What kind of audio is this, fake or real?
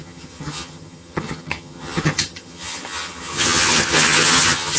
fake